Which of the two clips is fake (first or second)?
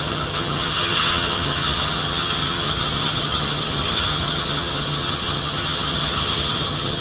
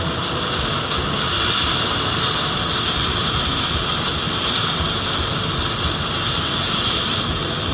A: first